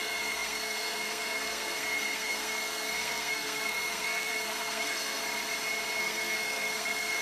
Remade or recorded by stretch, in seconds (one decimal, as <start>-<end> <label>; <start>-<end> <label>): 0.0-5.2 remade; 5.2-6.0 recorded; 6.0-7.2 remade